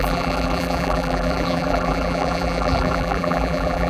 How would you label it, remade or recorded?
remade